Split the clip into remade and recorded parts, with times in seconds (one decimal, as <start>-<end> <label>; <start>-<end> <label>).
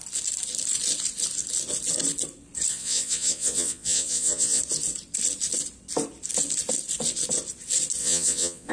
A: 0.0-2.7 recorded; 2.7-4.6 remade; 4.6-8.0 recorded; 8.0-8.7 remade